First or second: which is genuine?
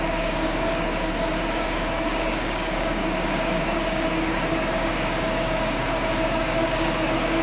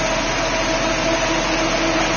second